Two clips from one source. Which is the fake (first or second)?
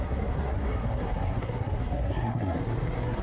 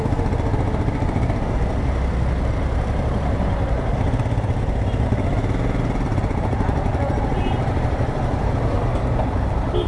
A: first